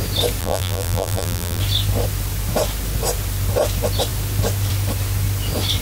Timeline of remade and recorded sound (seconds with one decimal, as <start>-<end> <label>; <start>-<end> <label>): 0.0-0.4 recorded; 0.4-1.6 remade; 1.6-5.8 recorded